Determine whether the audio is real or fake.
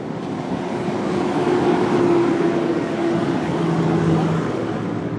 fake